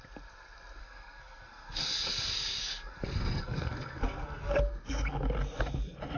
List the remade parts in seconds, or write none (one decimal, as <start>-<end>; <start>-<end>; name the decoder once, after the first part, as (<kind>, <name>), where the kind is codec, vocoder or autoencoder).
0.8-4.5 (codec, SNAC)